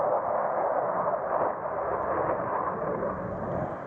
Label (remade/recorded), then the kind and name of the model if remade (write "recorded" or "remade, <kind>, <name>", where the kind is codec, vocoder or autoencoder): recorded